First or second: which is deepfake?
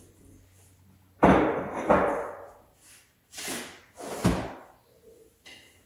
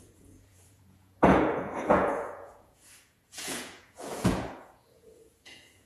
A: second